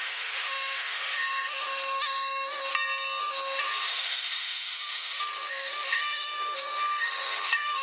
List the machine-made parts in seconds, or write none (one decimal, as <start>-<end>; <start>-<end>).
0.0-2.7; 3.2-7.8